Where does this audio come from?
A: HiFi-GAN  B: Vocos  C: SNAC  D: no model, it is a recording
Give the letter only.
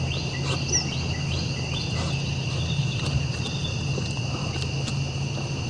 D